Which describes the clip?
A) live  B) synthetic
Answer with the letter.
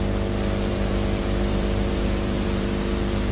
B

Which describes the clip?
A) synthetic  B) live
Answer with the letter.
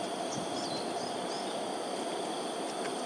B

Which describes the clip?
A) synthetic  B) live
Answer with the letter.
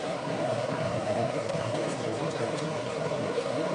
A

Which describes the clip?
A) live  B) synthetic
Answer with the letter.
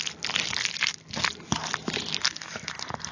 A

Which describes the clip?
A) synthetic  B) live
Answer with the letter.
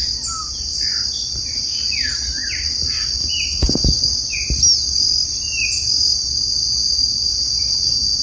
B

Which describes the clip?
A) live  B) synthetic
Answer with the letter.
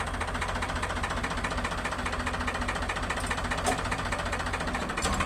A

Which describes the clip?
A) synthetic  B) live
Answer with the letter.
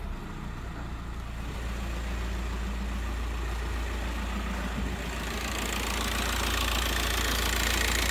B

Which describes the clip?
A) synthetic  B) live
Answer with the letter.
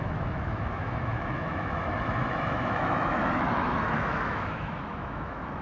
A